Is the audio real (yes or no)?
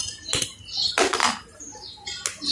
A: yes